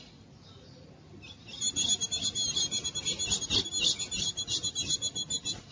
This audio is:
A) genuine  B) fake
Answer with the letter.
A